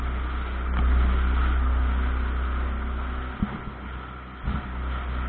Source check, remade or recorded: recorded